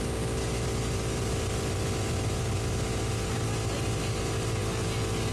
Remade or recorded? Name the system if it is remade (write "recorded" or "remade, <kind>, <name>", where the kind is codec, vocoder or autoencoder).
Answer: recorded